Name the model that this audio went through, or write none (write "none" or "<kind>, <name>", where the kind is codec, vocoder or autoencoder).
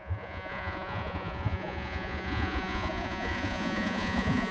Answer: vocoder, Vocos